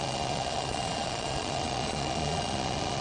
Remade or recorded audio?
remade